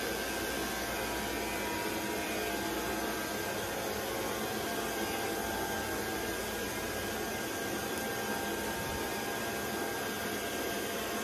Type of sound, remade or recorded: recorded